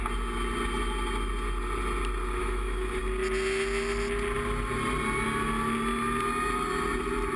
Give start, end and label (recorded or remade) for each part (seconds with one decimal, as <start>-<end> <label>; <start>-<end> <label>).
0.0-2.4 recorded; 2.4-3.0 remade; 3.0-7.4 recorded